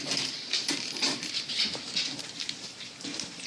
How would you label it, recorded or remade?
remade